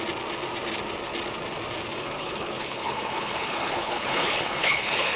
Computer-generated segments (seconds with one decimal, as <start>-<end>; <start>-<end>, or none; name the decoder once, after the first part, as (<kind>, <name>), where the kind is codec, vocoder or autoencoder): 1.9-5.2 (codec, HILCodec)